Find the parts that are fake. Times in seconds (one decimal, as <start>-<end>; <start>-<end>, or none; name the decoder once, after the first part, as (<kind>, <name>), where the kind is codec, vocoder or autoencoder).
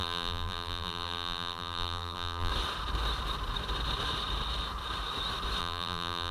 0.0-2.5 (vocoder, BigVGAN v2); 5.6-6.3